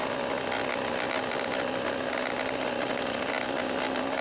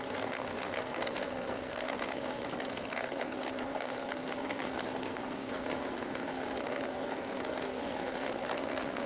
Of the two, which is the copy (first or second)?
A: second